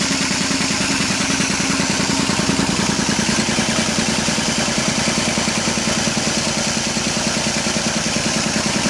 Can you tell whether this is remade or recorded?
recorded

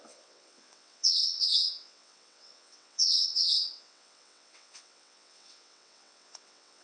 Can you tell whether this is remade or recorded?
remade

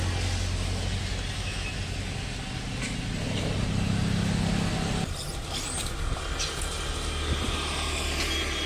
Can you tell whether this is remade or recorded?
recorded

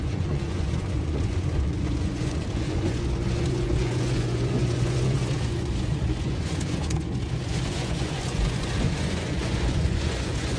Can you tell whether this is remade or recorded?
remade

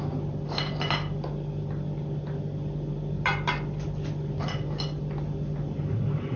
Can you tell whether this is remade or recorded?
recorded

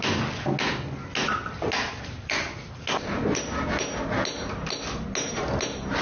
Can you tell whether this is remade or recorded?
recorded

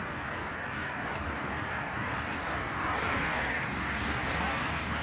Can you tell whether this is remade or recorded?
remade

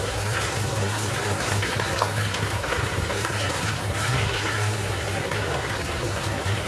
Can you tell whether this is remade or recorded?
remade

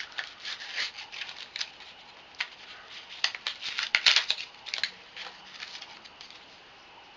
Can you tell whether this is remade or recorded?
recorded